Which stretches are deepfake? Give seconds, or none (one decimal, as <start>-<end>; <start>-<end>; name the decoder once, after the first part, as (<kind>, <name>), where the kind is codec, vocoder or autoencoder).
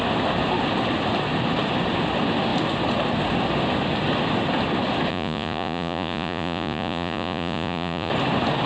5.1-8.1 (vocoder, Vocos)